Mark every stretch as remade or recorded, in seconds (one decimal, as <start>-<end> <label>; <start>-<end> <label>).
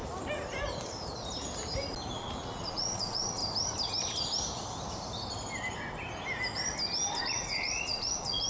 0.0-2.1 recorded; 2.1-3.4 remade; 3.4-7.2 recorded; 7.2-8.5 remade